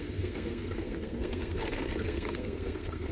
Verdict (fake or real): fake